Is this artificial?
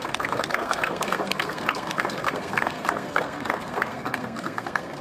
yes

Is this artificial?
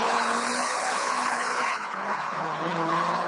yes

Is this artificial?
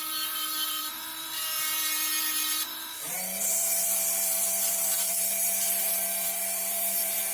yes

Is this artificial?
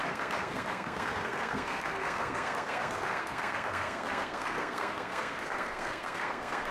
yes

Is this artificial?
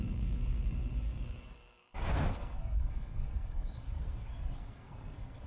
yes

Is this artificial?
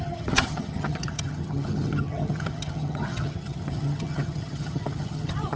yes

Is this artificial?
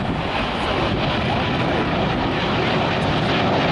no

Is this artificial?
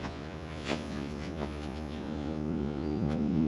yes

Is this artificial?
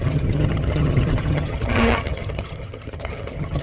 yes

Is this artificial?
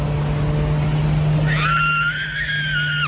no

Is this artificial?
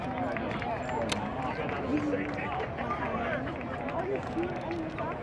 no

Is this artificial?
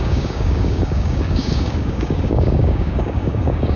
yes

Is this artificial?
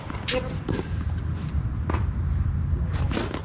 no